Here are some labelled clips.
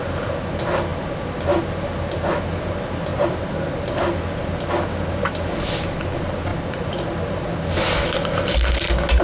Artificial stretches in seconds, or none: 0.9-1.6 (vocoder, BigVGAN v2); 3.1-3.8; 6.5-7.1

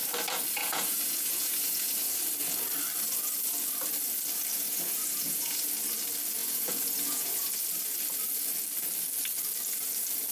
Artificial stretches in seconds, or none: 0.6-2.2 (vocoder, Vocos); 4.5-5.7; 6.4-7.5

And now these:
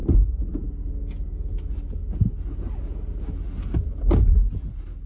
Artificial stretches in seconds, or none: 0.0-0.9 (vocoder, BigVGAN v2)

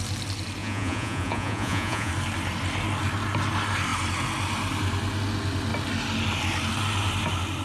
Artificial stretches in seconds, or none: 0.6-2.1 (vocoder, Vocos)

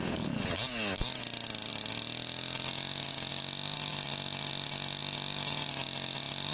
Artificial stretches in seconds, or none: none

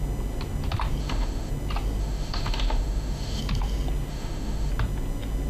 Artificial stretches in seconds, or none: 1.0-1.5 (autoencoder, DAC-VAE); 2.0-3.4; 4.1-4.7

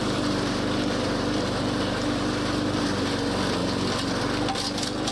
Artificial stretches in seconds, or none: 0.0-3.1 (vocoder, BigVGAN v2)

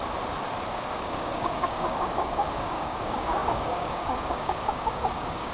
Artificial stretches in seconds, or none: 0.7-5.5 (codec, DAC)